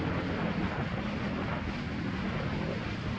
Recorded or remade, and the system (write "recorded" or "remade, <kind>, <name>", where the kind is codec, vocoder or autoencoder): recorded